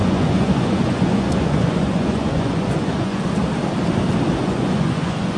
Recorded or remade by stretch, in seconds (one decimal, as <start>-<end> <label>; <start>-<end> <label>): 0.0-3.2 remade; 3.2-4.4 recorded; 4.4-5.4 remade